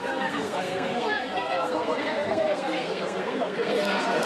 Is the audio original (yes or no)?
no